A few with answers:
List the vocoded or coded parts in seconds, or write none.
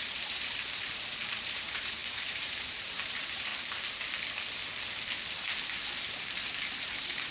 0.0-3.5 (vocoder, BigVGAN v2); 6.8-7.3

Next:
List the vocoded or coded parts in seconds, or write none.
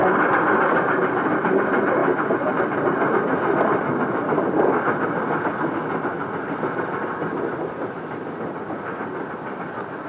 none